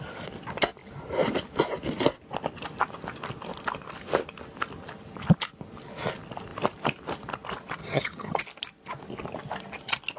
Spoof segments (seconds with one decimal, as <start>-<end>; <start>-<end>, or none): 7.8-8.4